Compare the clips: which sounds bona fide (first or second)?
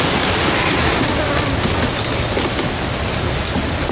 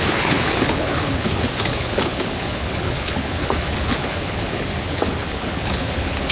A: first